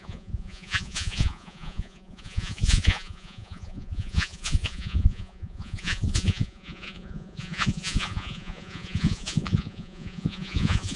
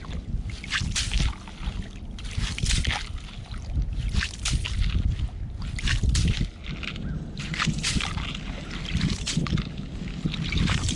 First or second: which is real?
second